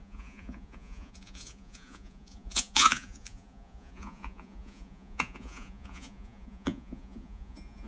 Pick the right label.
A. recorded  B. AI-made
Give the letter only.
B